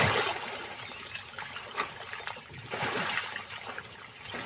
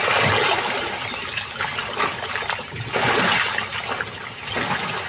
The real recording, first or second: second